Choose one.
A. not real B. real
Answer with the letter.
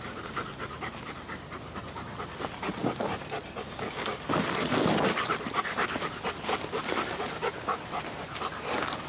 B